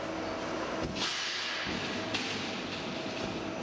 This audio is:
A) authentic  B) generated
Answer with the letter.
A